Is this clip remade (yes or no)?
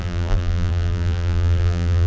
yes